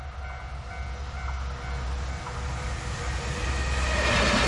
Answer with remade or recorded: recorded